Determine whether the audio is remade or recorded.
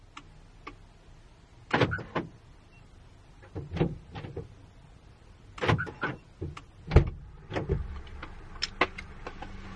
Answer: recorded